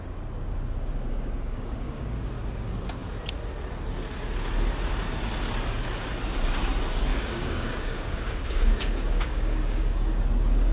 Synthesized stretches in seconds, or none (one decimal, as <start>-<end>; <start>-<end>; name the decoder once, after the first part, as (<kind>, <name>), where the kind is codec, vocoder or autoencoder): 1.1-2.3 (codec, DAC); 7.1-10.2